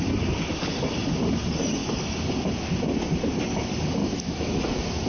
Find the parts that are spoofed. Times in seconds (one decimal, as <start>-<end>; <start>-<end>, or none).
4.0-4.6